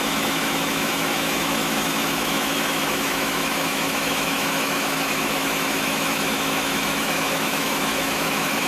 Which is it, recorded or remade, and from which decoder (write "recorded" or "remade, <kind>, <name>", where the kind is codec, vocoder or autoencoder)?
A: remade, autoencoder, DAC-VAE